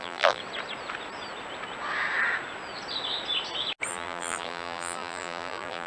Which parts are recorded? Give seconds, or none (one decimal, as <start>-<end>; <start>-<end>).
0.4-3.9